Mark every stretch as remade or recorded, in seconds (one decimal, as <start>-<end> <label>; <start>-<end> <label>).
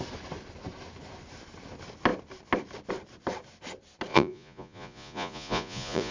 0.0-4.1 recorded; 4.1-6.1 remade